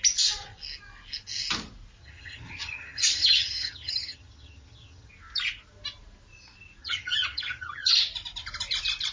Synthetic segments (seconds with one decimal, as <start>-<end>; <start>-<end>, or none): 2.0-5.1; 6.8-7.9